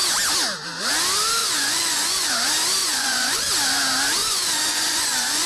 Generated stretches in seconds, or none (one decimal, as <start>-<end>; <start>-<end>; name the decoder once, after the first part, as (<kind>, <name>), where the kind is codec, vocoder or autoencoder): 1.4-2.3 (vocoder, Vocos); 2.8-3.5; 4.2-5.5